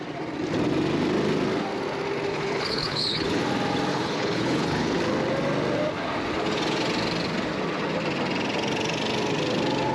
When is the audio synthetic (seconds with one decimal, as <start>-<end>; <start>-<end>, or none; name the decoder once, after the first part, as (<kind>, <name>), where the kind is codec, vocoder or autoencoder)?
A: 2.3-3.4 (codec, HILCodec); 3.9-5.0